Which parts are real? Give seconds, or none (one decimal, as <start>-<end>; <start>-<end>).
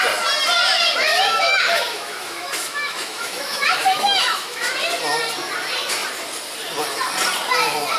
0.0-1.1; 4.7-8.0